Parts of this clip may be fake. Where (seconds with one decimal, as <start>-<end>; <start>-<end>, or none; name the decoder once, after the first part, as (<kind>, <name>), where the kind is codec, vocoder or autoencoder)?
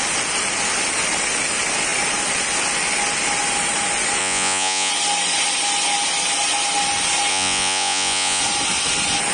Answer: 4.2-4.9 (vocoder, Vocos); 7.3-8.4